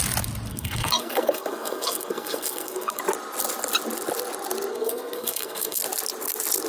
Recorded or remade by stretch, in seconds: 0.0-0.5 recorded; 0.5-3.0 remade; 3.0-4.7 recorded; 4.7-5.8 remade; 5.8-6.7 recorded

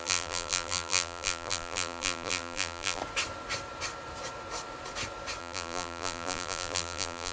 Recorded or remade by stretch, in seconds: 0.0-3.0 remade; 3.0-5.4 recorded; 5.4-7.3 remade